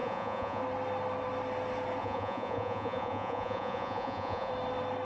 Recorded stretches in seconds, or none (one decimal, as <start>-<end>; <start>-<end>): 0.6-2.0; 4.5-5.0